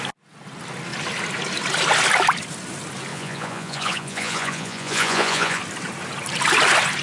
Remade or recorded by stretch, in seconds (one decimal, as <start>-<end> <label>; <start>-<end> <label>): 0.0-3.1 recorded; 3.1-5.6 remade; 5.6-7.0 recorded